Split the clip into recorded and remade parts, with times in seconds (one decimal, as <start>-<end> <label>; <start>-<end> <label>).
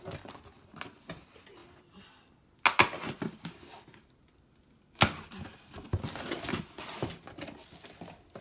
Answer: 0.0-8.4 recorded